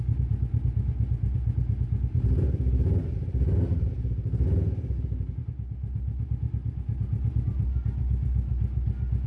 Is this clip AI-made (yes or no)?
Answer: no